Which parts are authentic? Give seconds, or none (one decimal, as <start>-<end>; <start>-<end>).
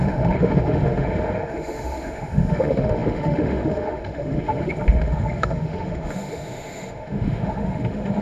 none